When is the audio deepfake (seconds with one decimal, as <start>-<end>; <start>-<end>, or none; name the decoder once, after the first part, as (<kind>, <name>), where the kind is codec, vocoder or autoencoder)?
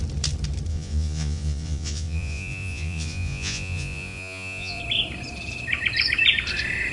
0.7-4.8 (vocoder, Vocos)